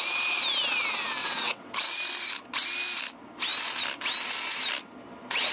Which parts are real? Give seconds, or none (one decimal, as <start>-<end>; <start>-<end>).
0.0-1.2; 2.0-5.5